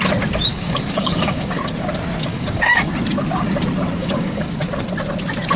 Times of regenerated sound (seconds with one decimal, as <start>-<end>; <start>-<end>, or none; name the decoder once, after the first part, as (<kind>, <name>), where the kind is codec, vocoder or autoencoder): 0.5-1.6 (codec, DAC); 2.3-2.9; 4.0-4.5